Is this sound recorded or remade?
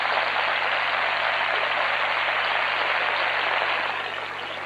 recorded